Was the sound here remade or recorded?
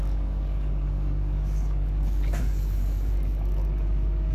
remade